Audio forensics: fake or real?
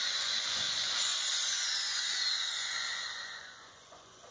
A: fake